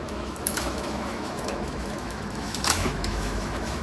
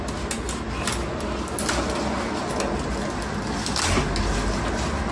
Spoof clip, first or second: first